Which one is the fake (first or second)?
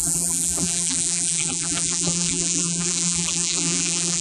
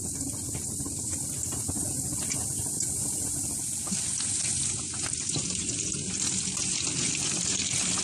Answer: first